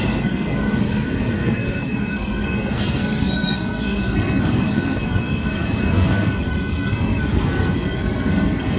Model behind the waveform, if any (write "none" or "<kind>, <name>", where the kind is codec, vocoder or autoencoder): codec, SNAC